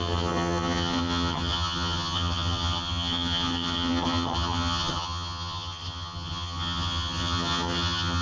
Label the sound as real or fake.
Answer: fake